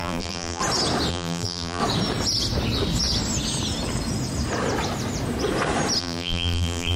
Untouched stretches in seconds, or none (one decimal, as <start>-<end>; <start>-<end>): 0.6-1.1; 1.8-6.0